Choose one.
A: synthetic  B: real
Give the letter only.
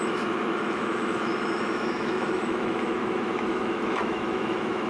A